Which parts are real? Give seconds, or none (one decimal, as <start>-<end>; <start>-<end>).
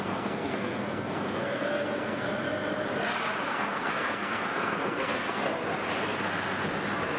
2.3-3.5; 5.5-7.2